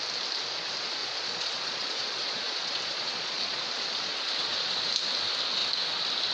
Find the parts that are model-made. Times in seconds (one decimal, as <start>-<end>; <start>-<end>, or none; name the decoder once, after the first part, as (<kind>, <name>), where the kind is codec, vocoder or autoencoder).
1.0-4.8 (vocoder, Vocos)